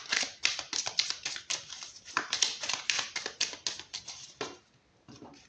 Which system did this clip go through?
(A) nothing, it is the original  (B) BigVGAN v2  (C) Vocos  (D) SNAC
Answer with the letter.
A